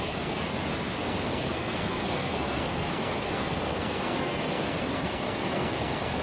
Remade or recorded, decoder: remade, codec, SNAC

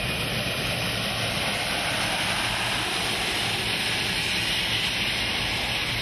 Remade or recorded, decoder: recorded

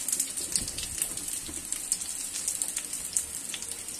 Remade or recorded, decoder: recorded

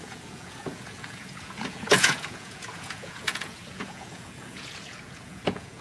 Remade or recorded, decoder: remade, vocoder, Vocos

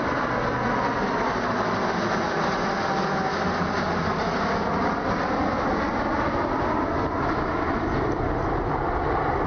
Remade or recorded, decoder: recorded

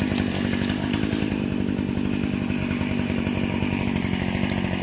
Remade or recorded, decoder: recorded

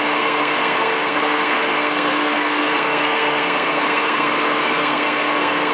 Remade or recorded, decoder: remade, codec, SNAC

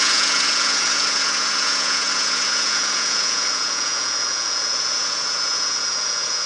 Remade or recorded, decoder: remade, vocoder, Vocos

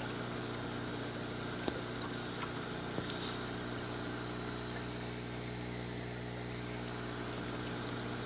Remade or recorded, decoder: recorded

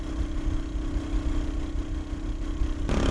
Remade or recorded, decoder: recorded